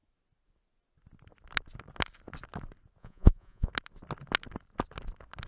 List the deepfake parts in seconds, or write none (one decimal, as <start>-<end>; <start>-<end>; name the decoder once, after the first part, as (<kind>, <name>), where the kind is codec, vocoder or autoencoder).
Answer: 3.0-3.7 (vocoder, Vocos)